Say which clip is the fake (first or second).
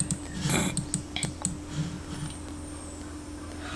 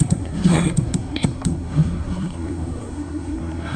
second